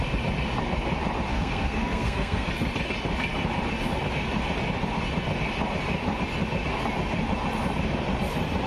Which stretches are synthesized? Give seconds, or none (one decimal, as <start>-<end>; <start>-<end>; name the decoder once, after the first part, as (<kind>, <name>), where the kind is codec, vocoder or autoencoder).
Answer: 1.3-2.5 (codec, SNAC)